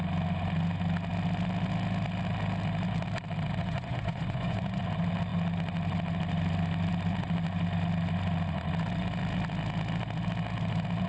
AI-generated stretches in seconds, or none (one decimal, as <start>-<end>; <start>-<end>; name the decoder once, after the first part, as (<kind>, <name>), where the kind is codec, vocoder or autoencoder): 3.6-4.8 (vocoder, Vocos)